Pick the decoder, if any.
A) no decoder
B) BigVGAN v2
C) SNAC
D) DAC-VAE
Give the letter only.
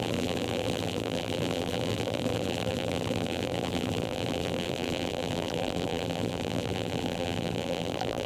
B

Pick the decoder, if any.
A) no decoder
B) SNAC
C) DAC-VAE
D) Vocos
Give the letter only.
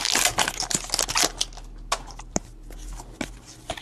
A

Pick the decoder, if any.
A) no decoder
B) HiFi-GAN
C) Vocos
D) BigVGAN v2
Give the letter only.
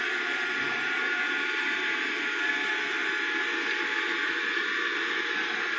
A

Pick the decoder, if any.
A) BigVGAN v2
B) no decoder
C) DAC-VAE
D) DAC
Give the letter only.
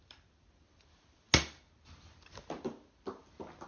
B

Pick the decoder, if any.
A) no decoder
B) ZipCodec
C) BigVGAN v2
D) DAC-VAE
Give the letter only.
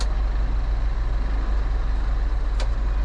A